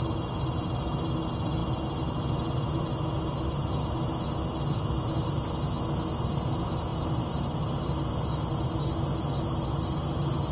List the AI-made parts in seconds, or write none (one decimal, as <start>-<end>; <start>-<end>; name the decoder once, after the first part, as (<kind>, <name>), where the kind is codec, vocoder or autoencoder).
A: 6.9-7.9 (vocoder, BigVGAN v2)